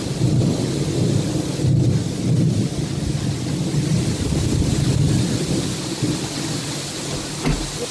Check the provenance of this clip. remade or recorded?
recorded